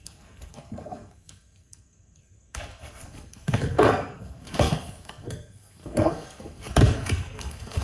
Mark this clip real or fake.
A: fake